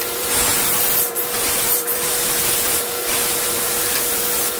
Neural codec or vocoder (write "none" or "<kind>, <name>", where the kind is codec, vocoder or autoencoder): vocoder, BigVGAN v2